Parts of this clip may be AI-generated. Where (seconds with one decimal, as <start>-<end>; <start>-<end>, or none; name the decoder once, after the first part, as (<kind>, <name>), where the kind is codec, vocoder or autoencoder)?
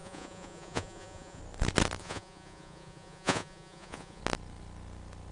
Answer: 0.0-1.4 (vocoder, Vocos); 2.0-4.2